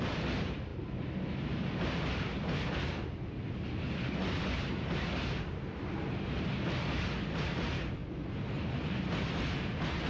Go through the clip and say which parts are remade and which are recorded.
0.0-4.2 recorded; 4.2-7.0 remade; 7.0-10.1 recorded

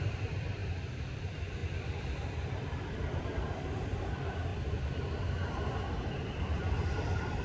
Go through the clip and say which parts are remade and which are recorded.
0.0-4.5 remade; 4.5-6.3 recorded; 6.3-7.4 remade

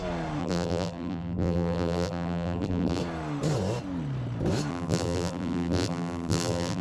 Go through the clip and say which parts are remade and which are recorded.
0.0-0.4 recorded; 0.4-3.0 remade; 3.0-4.7 recorded; 4.7-6.8 remade